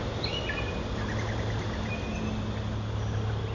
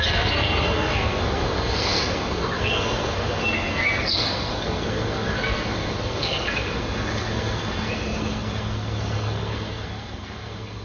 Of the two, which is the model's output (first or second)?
second